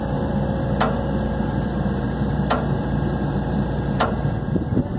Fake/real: fake